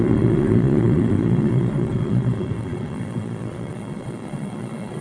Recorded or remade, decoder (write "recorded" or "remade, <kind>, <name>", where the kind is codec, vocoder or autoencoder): remade, vocoder, Vocos